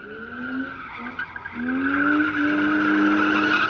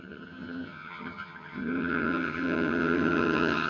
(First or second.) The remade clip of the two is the second